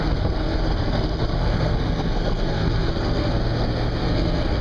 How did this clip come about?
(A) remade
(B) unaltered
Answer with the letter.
A